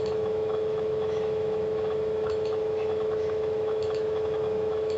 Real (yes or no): no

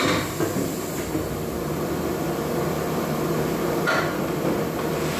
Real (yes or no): yes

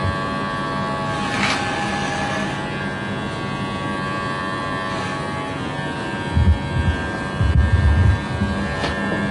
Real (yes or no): yes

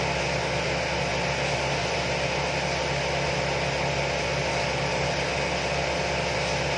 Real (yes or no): yes